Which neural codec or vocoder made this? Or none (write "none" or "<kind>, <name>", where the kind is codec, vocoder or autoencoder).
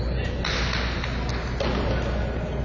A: none